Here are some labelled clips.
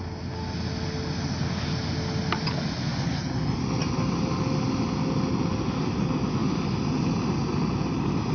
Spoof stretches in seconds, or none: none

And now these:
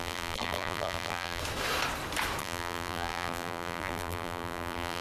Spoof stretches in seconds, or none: 0.0-1.4; 2.4-5.0

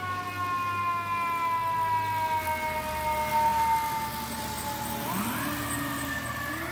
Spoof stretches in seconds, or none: none

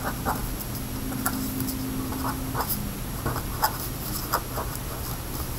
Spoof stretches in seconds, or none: none

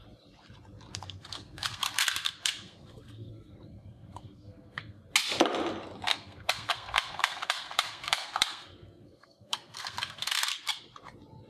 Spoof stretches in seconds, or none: 0.9-5.0; 6.1-10.8

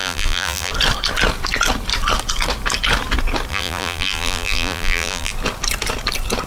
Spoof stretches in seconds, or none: 0.0-0.7; 3.5-5.3